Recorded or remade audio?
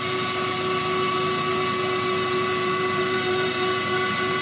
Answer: recorded